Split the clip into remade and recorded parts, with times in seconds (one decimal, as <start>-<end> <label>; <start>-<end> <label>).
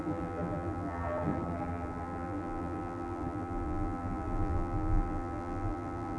0.0-6.2 remade